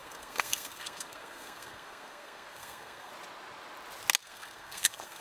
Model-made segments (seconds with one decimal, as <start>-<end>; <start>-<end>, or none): 0.0-3.1; 4.2-5.2